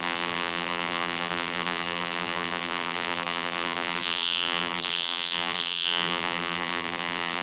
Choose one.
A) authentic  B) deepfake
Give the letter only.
B